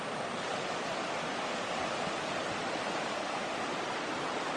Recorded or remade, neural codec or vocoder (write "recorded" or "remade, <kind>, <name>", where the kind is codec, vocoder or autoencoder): recorded